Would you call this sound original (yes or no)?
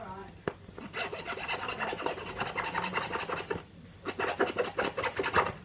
yes